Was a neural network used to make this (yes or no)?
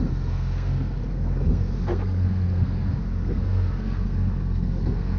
yes